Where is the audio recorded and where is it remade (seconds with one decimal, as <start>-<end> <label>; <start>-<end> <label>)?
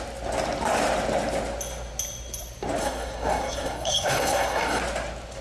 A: 0.0-2.8 recorded; 2.8-4.8 remade; 4.8-5.4 recorded